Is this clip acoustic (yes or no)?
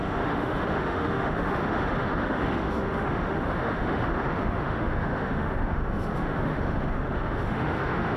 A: no